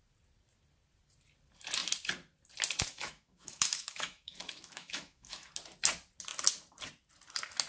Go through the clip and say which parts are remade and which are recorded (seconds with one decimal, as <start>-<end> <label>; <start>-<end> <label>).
0.0-2.9 recorded; 2.9-5.5 remade; 5.5-7.7 recorded